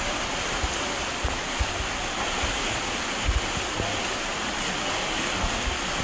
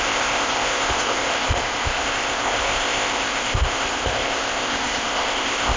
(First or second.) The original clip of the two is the first